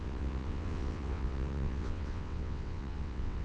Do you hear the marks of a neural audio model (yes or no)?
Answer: yes